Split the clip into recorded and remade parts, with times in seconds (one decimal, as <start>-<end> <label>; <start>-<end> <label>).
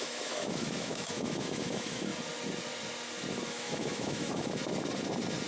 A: 0.0-2.1 remade; 2.1-3.5 recorded; 3.5-4.6 remade; 4.6-5.5 recorded